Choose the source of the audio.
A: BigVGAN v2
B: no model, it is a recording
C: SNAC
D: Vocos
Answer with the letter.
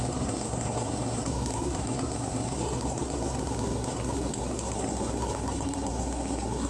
C